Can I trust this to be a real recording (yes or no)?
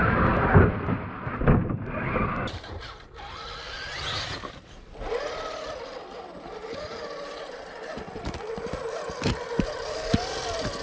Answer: yes